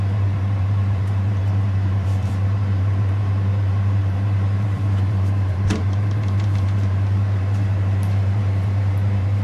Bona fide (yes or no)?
no